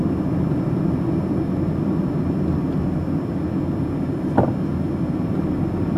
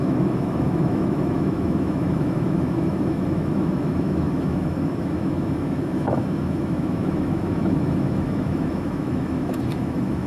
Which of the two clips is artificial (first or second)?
second